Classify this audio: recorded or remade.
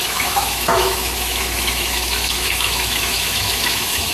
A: remade